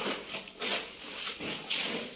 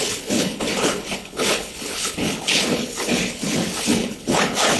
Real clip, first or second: first